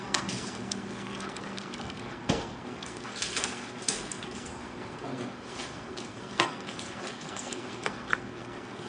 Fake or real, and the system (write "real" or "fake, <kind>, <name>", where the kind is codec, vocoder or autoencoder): fake, codec, SNAC